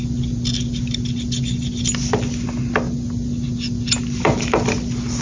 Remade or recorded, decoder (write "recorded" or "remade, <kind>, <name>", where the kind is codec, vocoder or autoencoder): recorded